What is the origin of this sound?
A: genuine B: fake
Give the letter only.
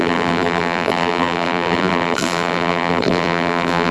B